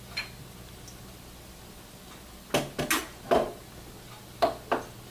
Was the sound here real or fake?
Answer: real